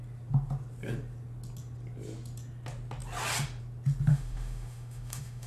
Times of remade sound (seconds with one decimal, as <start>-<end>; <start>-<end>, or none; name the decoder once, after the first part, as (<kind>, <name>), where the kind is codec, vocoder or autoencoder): 4.1-5.5 (autoencoder, DAC-VAE)